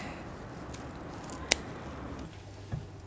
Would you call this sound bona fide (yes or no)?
yes